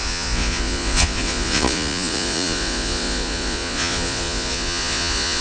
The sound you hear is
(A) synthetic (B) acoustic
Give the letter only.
A